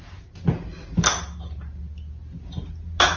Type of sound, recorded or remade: recorded